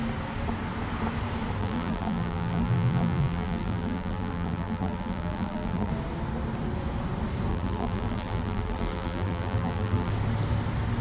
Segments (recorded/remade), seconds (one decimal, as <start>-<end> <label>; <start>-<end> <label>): 0.0-1.6 recorded; 1.6-5.9 remade; 5.9-7.5 recorded; 7.5-10.1 remade; 10.1-11.0 recorded